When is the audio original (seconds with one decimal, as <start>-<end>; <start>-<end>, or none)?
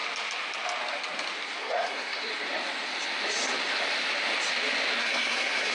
0.0-1.6; 2.3-5.0